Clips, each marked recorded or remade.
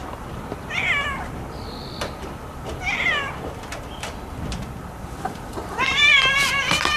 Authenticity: remade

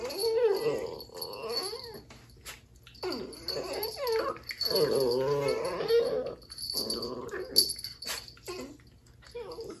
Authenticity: recorded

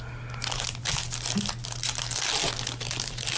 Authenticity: recorded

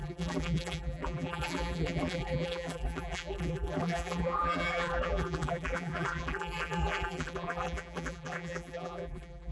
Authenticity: remade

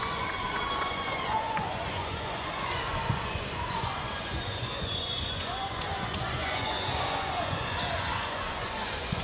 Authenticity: remade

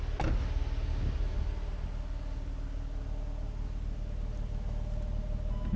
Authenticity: recorded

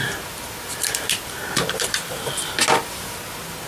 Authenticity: recorded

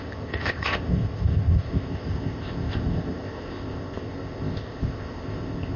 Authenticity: remade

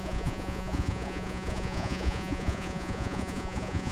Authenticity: remade